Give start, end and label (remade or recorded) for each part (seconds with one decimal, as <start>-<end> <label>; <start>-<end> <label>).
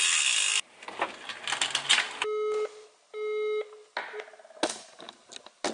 0.0-5.7 recorded